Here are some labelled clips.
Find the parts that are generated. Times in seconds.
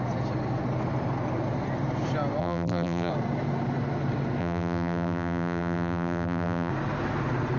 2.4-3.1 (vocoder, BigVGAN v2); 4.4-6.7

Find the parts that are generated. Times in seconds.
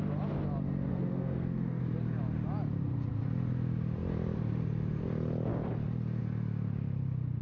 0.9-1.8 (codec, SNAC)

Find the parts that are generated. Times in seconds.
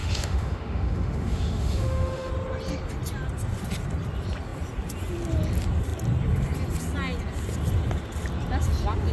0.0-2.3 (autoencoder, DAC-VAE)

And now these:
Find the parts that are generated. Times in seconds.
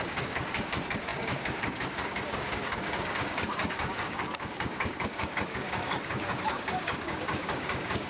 0.0-8.1 (codec, DAC)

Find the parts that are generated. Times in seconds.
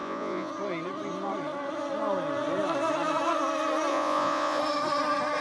0.0-0.5 (vocoder, Vocos); 3.9-4.6